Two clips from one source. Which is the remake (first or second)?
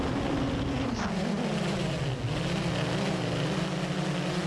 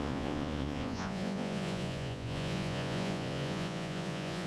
second